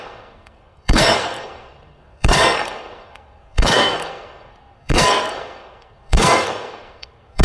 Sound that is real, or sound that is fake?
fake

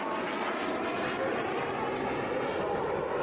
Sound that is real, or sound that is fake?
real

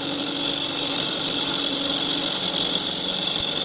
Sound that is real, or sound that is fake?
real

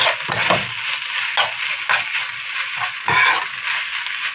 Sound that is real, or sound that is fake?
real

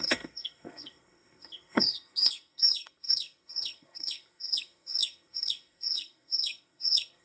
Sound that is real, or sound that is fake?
fake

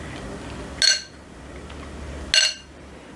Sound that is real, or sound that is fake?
real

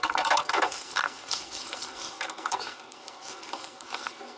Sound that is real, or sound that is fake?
fake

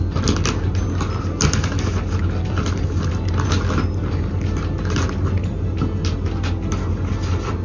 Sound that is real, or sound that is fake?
real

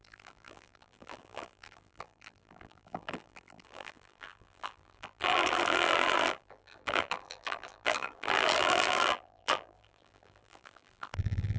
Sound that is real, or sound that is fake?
fake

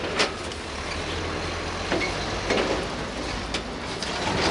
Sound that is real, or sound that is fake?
real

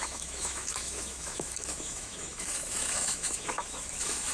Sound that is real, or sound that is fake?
fake